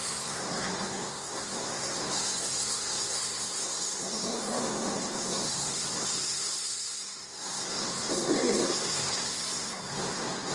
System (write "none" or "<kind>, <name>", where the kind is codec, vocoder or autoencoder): codec, SNAC